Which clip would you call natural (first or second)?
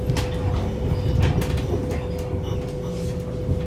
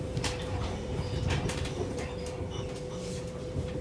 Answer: first